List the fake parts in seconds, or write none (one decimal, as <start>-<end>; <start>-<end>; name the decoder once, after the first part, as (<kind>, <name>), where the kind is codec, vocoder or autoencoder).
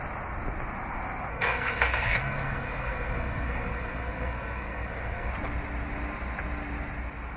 1.3-5.3 (codec, SNAC)